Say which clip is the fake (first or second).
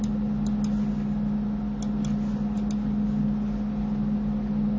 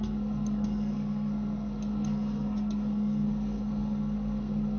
second